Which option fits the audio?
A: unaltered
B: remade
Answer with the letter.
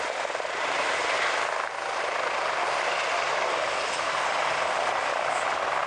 A